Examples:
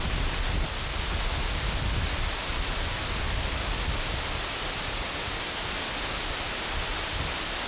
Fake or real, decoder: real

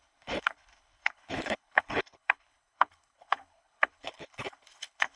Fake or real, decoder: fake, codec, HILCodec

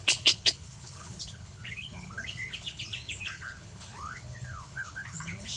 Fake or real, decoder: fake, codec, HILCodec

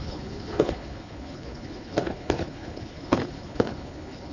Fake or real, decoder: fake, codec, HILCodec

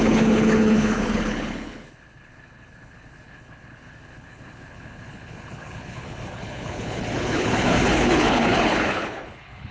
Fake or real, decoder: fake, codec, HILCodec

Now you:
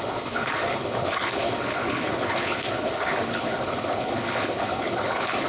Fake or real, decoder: fake, codec, HILCodec